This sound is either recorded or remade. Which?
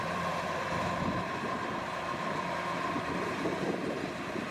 remade